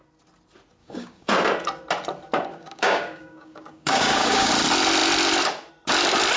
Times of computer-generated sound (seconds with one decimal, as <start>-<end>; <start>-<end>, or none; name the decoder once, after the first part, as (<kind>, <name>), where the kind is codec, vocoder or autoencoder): 0.8-1.3 (codec, DAC); 2.5-4.5